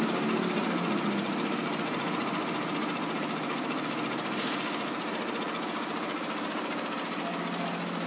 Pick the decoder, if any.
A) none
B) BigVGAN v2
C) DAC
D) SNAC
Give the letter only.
A